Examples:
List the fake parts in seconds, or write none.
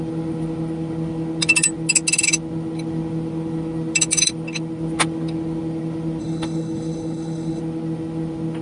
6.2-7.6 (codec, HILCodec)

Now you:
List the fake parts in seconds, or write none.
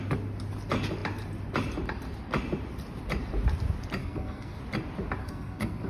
4.0-4.6 (codec, SNAC); 5.2-5.9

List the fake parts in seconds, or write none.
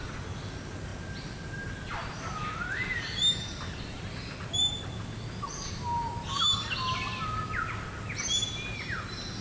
none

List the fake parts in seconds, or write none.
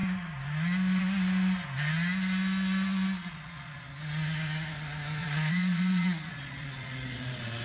3.2-3.9 (vocoder, Vocos); 5.2-7.6